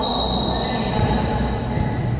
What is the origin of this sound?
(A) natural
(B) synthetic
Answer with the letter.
A